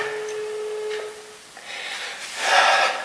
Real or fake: real